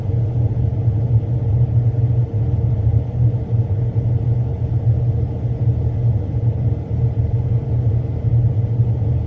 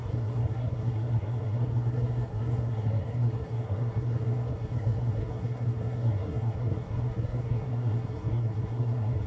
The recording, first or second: first